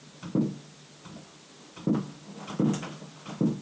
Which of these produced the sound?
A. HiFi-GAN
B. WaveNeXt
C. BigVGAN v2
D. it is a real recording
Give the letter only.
D